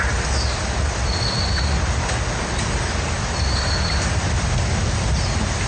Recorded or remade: recorded